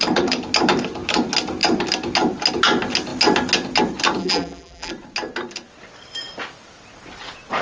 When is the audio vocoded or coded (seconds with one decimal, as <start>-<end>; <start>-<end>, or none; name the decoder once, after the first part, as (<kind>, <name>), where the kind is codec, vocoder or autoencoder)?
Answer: 4.2-4.9 (vocoder, BigVGAN v2)